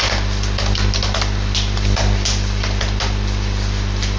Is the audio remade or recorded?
recorded